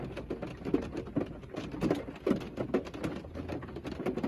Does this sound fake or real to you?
real